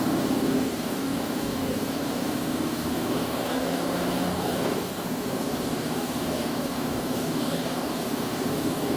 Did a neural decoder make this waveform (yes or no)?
yes